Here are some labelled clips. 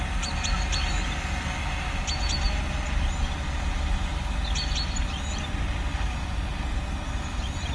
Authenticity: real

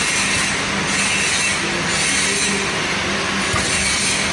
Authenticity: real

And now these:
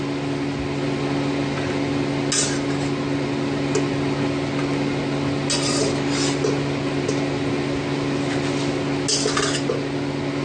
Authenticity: real